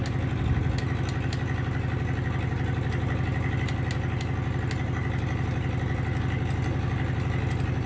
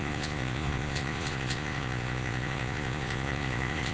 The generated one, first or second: second